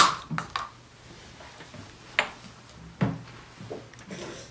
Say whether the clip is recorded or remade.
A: recorded